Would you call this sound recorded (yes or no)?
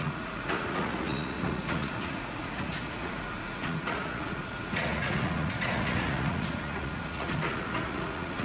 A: no